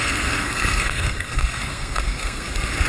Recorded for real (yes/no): no